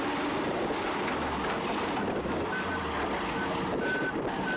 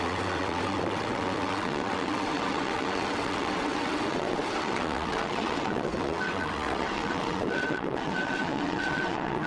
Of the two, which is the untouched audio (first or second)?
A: first